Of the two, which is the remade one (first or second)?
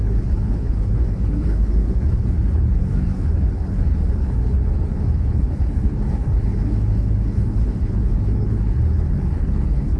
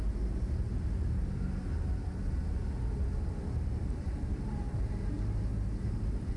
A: first